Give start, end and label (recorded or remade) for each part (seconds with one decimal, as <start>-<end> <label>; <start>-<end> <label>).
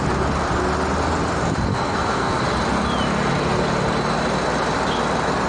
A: 0.0-1.7 recorded; 1.7-2.4 remade; 2.4-5.5 recorded